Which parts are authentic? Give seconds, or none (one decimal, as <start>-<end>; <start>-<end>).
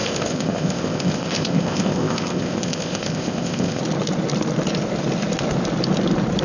3.8-6.4